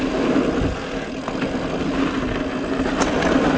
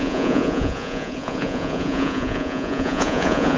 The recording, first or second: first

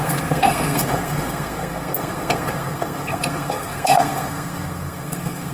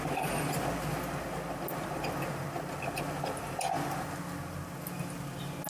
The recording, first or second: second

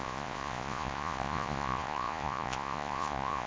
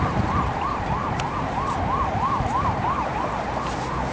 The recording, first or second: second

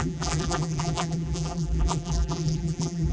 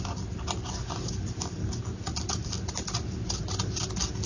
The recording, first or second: second